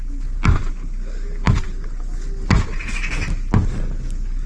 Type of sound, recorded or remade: recorded